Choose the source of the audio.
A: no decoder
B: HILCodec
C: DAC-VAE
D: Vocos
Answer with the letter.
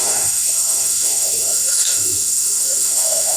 C